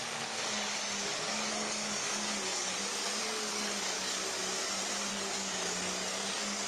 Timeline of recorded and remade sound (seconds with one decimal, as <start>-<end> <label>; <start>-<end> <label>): 0.0-4.4 remade; 4.4-5.1 recorded; 5.1-6.7 remade